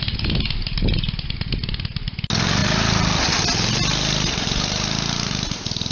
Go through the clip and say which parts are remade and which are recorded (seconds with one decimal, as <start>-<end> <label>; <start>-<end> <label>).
0.0-5.9 recorded